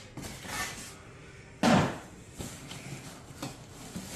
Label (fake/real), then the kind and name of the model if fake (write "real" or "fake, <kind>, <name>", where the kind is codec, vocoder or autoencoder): real